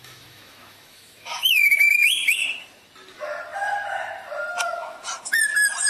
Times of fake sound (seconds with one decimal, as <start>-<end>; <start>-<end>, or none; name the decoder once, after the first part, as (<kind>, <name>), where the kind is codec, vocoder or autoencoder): 0.0-2.4 (autoencoder, DAC-VAE)